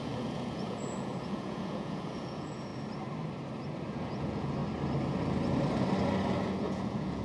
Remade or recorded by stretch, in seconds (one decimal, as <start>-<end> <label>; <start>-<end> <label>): 0.0-2.7 remade; 2.7-3.9 recorded; 3.9-4.6 remade; 4.6-6.4 recorded; 6.4-7.2 remade